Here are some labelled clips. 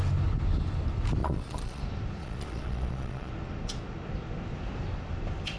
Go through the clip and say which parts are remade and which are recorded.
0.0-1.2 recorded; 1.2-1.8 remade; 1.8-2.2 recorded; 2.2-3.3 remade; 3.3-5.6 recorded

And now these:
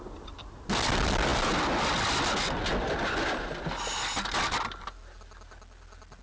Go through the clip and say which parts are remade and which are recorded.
0.0-6.2 recorded

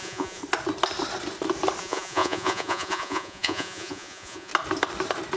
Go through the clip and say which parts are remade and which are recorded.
0.0-0.4 remade; 0.4-1.8 recorded; 1.8-4.5 remade; 4.5-5.4 recorded

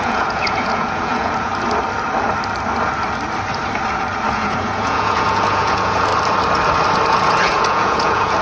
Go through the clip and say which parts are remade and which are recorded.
0.0-1.5 remade; 1.5-4.3 recorded; 4.3-6.1 remade; 6.1-7.1 recorded; 7.1-8.4 remade

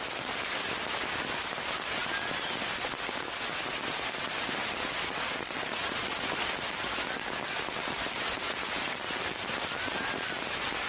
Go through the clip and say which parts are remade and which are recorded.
0.0-5.7 recorded; 5.7-6.5 remade; 6.5-10.9 recorded

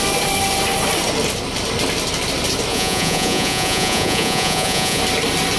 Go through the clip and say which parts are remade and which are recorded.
0.0-2.7 recorded; 2.7-5.0 remade; 5.0-5.6 recorded

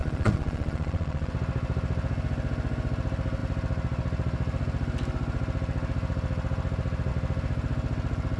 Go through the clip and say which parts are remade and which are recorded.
0.0-1.3 remade; 1.3-8.4 recorded

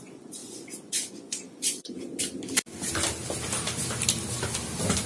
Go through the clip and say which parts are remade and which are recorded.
0.0-2.1 remade; 2.1-5.1 recorded